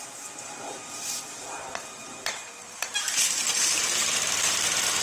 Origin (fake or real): fake